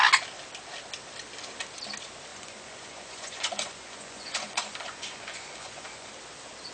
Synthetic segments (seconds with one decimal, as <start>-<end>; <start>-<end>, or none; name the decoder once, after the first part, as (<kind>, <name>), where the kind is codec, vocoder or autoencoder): 2.3-6.1 (vocoder, Vocos)